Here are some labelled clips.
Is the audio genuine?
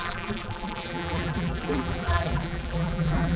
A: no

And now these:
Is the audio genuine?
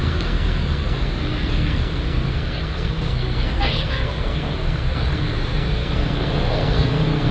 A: no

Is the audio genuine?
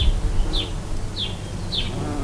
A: yes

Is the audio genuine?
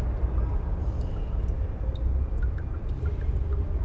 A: yes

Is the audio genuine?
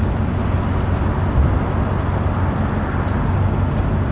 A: yes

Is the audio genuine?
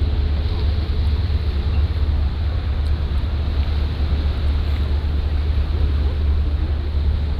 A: yes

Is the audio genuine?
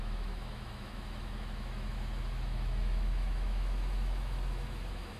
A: no